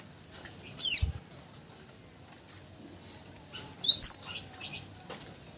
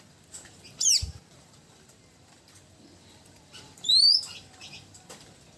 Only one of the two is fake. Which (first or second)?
second